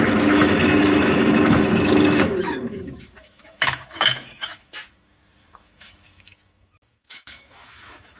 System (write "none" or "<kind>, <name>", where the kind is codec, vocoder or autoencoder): autoencoder, DAC-VAE